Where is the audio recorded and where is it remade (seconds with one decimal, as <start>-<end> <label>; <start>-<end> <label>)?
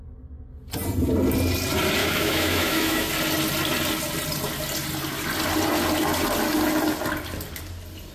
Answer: 0.0-2.0 recorded; 2.0-3.1 remade; 3.1-8.1 recorded